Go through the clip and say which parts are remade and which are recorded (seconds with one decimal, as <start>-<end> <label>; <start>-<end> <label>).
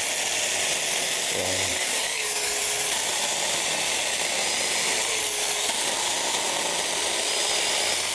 0.0-1.7 recorded; 1.7-2.6 remade; 2.6-8.1 recorded